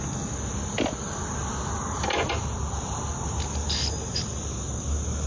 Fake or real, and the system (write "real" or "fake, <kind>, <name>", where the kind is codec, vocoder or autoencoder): real